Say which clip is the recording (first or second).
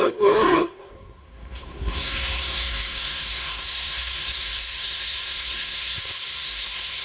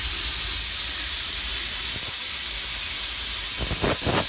second